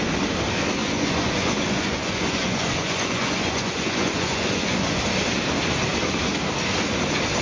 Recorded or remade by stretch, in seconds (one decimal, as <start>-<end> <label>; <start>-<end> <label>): 0.0-0.8 recorded; 0.8-5.0 remade; 5.0-7.4 recorded